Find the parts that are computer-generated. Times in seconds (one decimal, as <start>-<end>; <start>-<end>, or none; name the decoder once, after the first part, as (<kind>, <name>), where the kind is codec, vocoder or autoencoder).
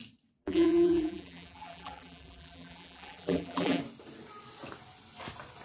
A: 0.4-3.8 (vocoder, BigVGAN v2)